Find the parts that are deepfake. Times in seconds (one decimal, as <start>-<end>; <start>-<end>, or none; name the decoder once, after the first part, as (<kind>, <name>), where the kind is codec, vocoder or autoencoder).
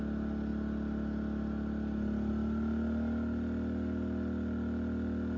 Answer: none